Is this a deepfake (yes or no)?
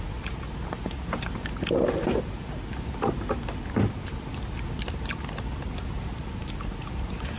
no